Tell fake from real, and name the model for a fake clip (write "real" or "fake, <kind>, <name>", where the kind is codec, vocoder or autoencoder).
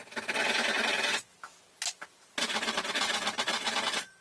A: real